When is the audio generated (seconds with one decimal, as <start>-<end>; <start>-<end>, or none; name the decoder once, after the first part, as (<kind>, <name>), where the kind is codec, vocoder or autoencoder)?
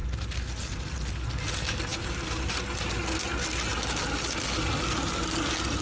none